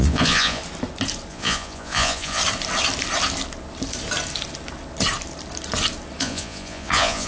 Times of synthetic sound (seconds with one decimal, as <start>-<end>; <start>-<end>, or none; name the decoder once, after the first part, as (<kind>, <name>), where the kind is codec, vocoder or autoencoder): 0.0-0.6 (vocoder, Vocos); 1.3-2.4; 6.2-7.3